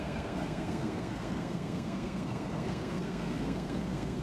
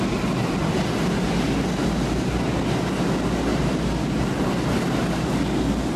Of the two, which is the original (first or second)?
second